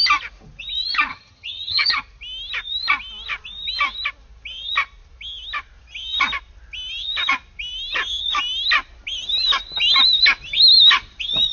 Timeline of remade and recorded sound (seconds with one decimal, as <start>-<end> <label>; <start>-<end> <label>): 0.0-1.1 recorded; 1.1-2.0 remade; 2.0-11.5 recorded